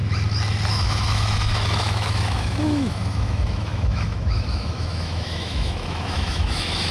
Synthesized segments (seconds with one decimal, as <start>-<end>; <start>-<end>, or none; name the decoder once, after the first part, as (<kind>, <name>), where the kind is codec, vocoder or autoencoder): 0.7-6.9 (autoencoder, DAC-VAE)